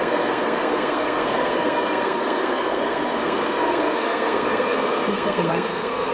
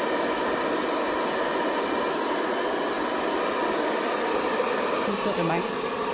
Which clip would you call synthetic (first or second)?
first